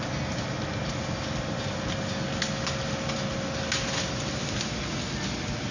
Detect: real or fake real